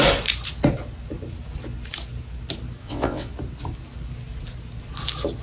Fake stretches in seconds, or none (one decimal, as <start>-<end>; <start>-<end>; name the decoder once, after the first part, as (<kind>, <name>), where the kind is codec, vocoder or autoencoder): 2.8-3.3 (vocoder, WaveNeXt)